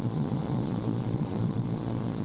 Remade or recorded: remade